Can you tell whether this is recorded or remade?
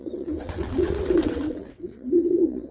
remade